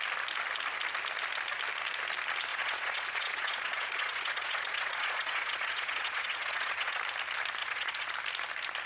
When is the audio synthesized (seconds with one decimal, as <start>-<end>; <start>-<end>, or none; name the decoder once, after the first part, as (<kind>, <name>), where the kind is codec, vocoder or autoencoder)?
2.5-7.0 (vocoder, Vocos); 7.6-8.1